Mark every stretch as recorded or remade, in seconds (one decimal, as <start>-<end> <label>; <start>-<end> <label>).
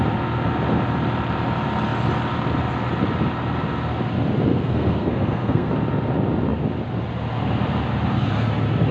0.0-4.5 recorded; 4.5-5.7 remade; 5.7-8.9 recorded